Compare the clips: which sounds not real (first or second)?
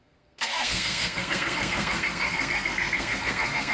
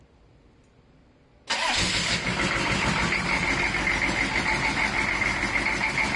first